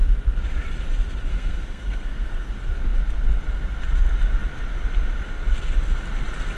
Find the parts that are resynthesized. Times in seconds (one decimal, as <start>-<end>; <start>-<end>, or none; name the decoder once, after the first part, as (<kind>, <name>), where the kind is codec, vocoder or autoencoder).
1.3-2.5 (codec, SNAC)